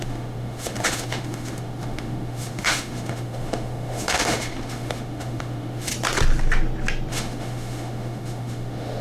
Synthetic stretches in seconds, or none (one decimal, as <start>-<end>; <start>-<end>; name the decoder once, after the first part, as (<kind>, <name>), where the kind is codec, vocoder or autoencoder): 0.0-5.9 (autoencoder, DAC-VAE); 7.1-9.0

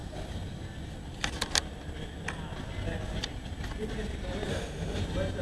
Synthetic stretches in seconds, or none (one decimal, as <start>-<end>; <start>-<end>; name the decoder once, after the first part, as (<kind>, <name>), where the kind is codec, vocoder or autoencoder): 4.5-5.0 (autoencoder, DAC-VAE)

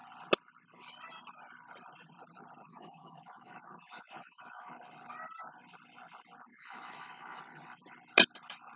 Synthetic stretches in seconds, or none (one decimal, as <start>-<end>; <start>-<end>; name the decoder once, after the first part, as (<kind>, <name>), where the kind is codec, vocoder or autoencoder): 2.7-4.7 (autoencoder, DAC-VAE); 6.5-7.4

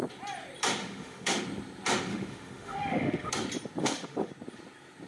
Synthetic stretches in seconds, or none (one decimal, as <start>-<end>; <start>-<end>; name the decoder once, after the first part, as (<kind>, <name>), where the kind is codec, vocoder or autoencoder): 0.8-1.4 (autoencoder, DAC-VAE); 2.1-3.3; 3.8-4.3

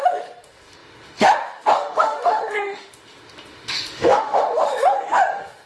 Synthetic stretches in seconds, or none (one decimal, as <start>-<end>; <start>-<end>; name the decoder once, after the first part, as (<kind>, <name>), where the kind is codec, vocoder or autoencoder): 0.0-5.7 (autoencoder, DAC-VAE)